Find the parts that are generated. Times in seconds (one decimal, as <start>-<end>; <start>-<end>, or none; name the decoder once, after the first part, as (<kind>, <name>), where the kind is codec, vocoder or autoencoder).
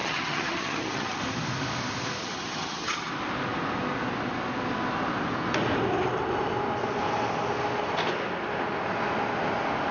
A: 0.0-1.2 (vocoder, HiFi-GAN); 2.2-3.1